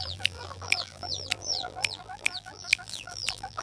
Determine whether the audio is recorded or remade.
remade